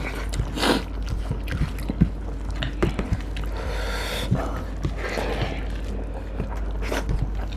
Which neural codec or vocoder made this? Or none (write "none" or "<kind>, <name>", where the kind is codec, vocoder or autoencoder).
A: none